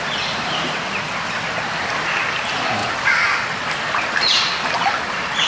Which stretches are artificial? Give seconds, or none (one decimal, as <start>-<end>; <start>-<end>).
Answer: none